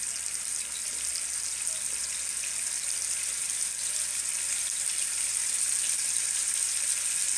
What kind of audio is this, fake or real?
real